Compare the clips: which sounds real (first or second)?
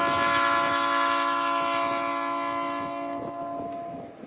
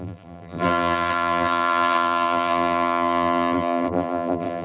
first